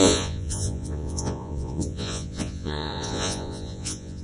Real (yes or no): no